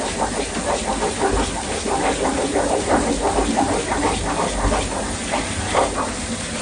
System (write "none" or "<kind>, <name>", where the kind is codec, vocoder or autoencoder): none